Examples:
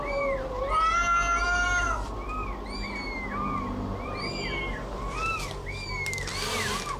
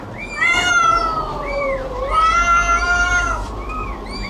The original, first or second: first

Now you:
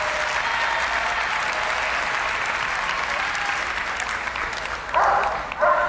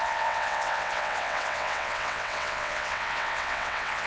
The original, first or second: first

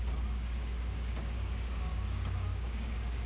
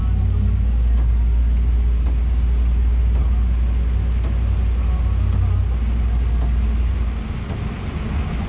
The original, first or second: second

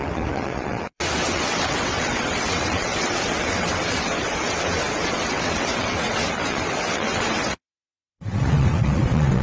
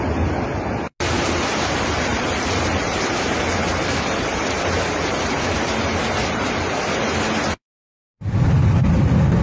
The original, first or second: second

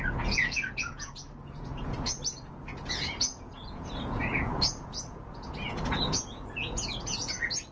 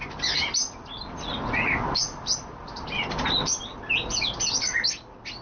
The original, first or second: second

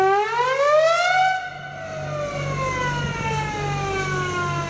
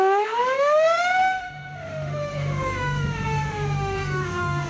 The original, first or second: first